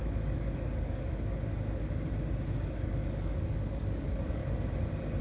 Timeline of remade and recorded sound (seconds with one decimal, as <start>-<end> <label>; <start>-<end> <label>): 0.0-1.5 remade; 1.5-2.6 recorded; 2.6-4.4 remade; 4.4-5.2 recorded